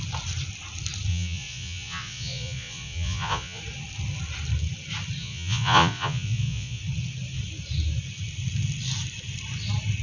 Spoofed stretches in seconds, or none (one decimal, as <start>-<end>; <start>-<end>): 1.1-3.6; 5.2-6.8